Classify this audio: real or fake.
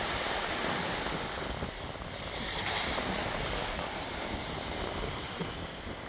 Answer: real